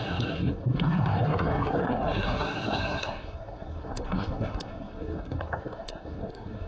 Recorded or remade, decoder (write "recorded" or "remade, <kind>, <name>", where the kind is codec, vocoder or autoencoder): remade, codec, SNAC